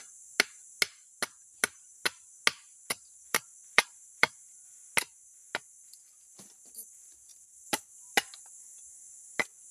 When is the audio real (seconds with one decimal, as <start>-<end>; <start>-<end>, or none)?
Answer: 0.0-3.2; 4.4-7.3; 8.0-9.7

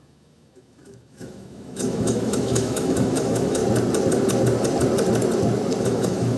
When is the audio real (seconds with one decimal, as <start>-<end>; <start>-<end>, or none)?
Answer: 3.6-5.8

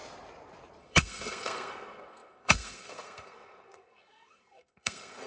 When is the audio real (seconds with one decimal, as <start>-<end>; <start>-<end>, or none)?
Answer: 0.0-0.8

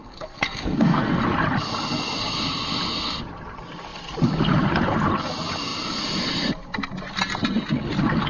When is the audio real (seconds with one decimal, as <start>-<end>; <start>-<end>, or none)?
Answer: 1.2-8.3

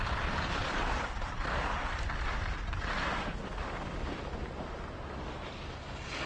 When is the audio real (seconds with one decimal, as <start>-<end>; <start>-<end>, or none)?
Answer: 0.0-6.3